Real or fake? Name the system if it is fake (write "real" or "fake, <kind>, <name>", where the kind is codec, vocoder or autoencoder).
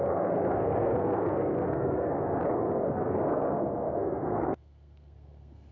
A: fake, codec, SNAC